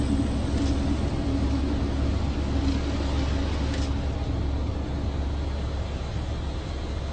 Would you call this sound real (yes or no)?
yes